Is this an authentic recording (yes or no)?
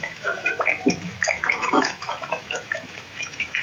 no